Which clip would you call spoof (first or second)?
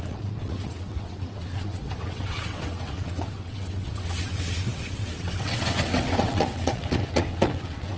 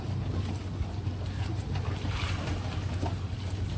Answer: first